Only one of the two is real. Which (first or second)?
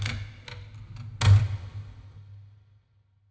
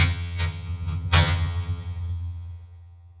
first